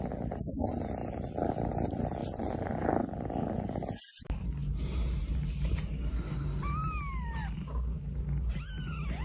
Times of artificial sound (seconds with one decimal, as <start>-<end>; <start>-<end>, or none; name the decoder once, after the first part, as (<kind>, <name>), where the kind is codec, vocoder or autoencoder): 2.2-2.9 (vocoder, BigVGAN v2); 4.6-7.0